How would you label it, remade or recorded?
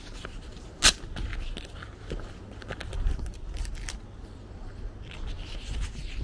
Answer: recorded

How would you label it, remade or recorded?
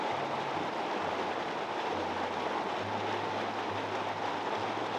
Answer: recorded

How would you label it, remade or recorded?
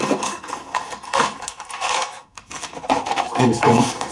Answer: remade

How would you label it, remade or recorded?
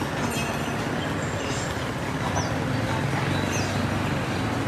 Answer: recorded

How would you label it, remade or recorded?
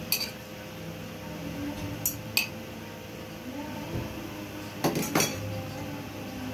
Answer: recorded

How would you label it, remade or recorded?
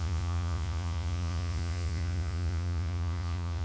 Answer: remade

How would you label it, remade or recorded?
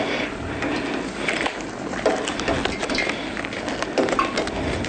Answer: recorded